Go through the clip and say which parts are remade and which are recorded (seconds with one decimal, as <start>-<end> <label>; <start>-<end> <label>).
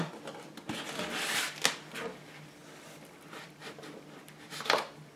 0.0-5.2 recorded